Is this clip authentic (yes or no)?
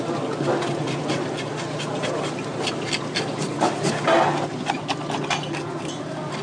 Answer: yes